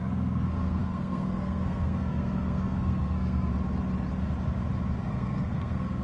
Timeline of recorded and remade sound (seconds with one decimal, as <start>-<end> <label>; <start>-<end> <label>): 0.0-3.5 remade; 3.5-5.0 recorded; 5.0-6.0 remade